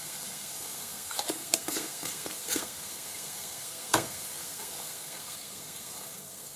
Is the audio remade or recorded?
remade